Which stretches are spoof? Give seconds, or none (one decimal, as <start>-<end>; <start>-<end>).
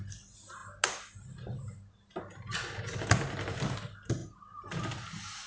none